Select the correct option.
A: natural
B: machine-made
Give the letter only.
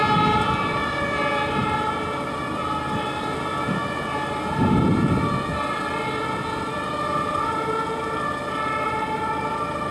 A